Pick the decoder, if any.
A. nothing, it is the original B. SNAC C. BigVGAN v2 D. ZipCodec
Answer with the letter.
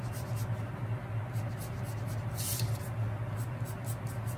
A